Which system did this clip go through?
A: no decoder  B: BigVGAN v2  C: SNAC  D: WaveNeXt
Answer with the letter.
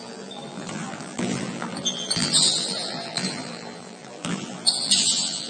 B